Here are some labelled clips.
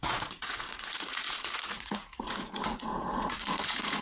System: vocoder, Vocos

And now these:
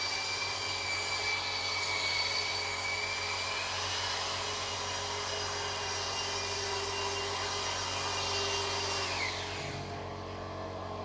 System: none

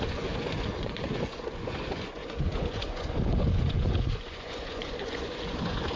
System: vocoder, Vocos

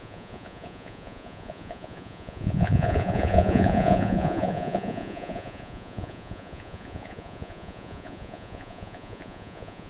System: vocoder, Vocos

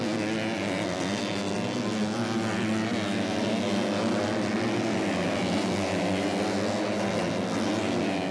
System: none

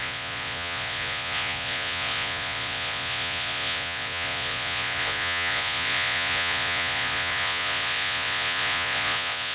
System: vocoder, Vocos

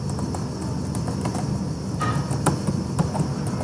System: none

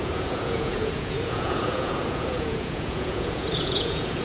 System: vocoder, Vocos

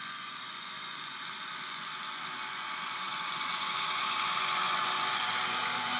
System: vocoder, Vocos